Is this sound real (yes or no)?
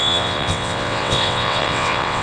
no